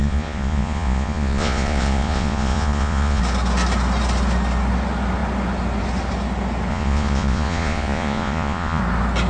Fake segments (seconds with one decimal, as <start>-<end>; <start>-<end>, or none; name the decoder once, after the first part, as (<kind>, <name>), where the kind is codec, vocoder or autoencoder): 0.0-3.2 (vocoder, Vocos); 6.7-8.8